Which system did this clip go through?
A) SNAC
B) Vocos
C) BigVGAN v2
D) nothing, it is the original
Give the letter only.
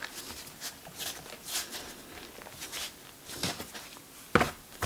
D